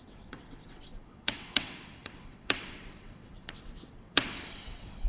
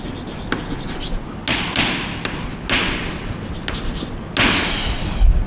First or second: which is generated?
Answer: first